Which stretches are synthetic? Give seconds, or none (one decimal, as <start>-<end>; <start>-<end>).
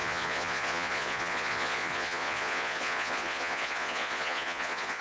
0.0-5.0